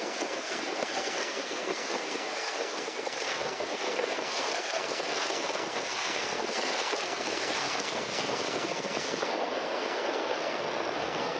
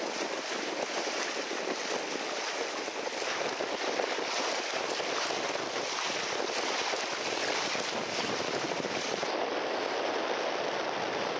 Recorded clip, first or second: second